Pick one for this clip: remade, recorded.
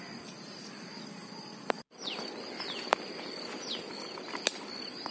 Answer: recorded